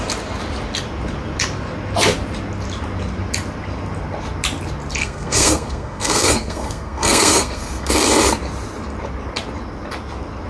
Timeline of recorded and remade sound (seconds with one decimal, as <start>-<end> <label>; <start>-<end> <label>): 0.0-5.0 recorded; 5.0-7.9 remade; 7.9-10.5 recorded

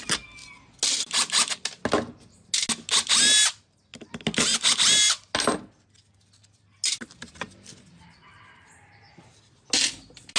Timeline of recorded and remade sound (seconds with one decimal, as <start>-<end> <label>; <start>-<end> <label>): 0.0-10.4 recorded

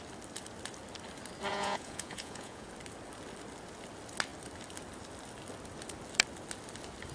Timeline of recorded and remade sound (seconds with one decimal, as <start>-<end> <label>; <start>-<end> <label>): 0.0-1.5 recorded; 1.5-2.7 remade; 2.7-7.1 recorded

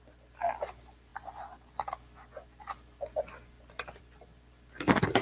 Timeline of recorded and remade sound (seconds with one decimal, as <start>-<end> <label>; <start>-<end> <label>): 0.0-5.2 recorded